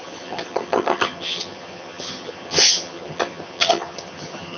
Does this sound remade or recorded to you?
remade